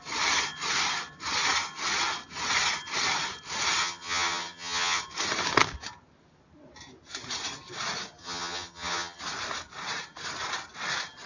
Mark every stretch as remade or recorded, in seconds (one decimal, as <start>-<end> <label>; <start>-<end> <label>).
0.0-3.8 recorded; 3.8-5.0 remade; 5.0-8.2 recorded; 8.2-9.2 remade; 9.2-11.3 recorded